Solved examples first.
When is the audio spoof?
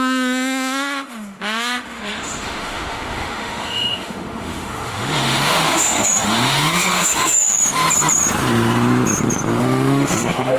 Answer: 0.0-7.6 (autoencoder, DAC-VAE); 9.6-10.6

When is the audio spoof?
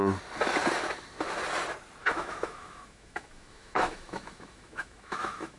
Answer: 2.0-5.6 (autoencoder, DAC-VAE)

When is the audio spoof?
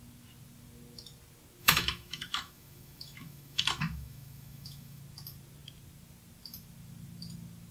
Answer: 1.6-5.0 (autoencoder, DAC-VAE)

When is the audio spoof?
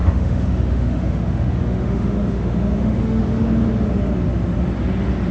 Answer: 0.0-3.2 (autoencoder, DAC-VAE)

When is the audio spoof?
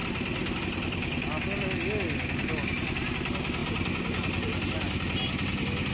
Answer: none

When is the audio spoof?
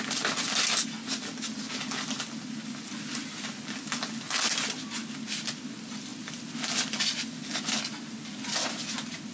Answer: none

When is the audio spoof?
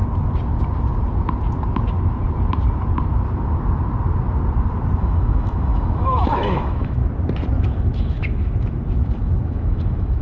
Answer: 5.0-7.0 (autoencoder, DAC-VAE); 7.6-10.2